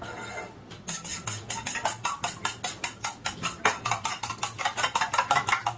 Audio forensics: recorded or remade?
recorded